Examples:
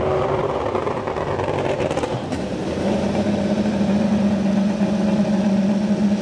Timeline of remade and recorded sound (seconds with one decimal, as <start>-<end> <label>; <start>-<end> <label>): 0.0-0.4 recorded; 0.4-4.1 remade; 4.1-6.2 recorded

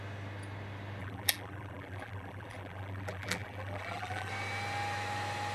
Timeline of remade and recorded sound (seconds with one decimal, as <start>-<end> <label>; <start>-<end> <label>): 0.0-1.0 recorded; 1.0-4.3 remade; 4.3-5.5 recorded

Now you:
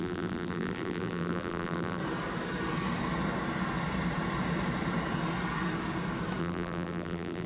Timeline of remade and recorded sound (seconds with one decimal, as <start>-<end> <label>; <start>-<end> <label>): 0.0-2.0 remade; 2.0-6.4 recorded; 6.4-7.5 remade